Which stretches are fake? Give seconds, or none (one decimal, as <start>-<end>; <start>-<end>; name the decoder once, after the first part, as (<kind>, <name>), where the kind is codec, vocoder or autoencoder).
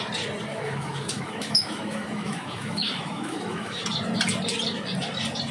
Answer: 0.5-3.8 (autoencoder, DAC-VAE)